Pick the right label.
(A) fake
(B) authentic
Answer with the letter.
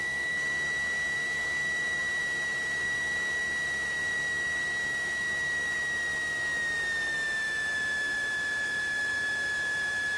A